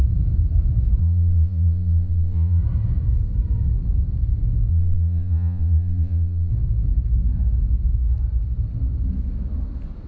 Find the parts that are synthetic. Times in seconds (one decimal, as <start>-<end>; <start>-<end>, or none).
1.0-2.6; 4.7-6.5